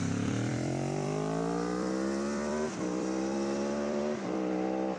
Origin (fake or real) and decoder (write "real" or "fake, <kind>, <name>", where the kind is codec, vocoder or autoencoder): fake, vocoder, BigVGAN v2